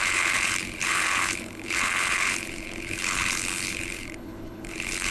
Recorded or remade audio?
remade